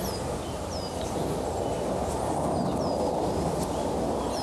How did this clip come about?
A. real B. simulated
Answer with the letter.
A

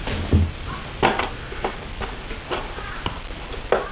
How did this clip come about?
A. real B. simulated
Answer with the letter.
A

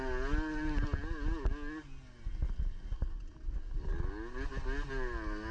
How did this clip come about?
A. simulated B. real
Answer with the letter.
B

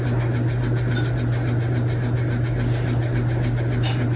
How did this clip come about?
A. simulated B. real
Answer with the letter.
B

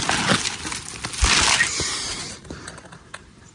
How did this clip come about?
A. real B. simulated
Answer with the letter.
A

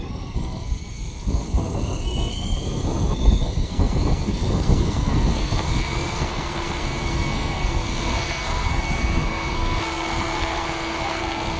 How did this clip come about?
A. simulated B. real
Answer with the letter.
A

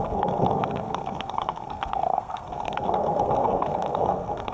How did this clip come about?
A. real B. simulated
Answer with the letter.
B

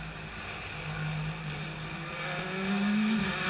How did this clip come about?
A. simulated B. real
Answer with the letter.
B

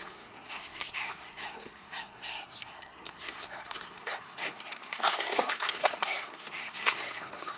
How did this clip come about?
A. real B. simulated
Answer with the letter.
B